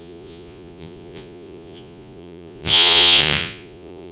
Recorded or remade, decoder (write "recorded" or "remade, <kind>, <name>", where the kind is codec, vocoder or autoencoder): remade, vocoder, Vocos